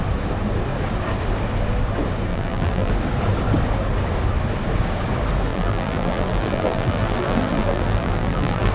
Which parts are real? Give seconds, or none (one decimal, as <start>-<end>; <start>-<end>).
0.0-2.3; 2.9-5.5